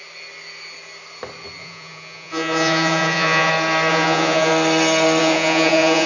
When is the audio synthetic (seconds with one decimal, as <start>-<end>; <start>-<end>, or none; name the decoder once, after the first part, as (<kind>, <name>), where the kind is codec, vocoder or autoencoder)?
1.6-3.5 (vocoder, Vocos); 3.9-4.5; 5.2-6.1